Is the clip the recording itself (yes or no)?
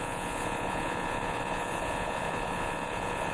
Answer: no